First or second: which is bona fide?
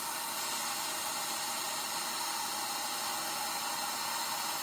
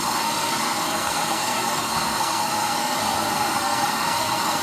first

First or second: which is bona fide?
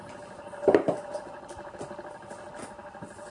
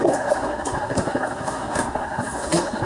first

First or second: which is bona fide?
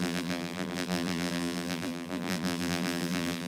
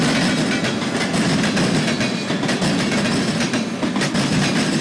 second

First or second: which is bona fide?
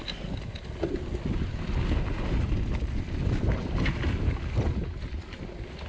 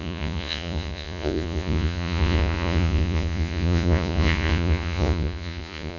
first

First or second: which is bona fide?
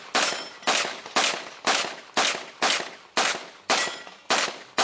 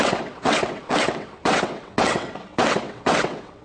first